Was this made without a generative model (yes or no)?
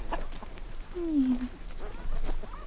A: yes